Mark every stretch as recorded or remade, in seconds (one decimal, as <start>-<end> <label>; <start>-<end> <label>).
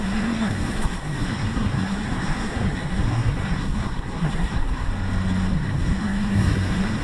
0.0-4.9 remade; 4.9-5.5 recorded; 5.5-7.0 remade